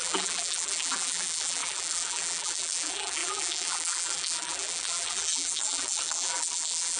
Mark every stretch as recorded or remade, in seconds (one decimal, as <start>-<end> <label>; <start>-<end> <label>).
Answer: 0.0-7.0 remade